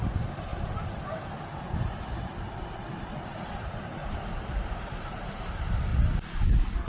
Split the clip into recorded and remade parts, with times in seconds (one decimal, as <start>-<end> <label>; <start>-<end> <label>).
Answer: 0.0-0.5 remade; 0.5-3.2 recorded; 3.2-4.0 remade; 4.0-4.9 recorded; 4.9-5.9 remade; 5.9-6.9 recorded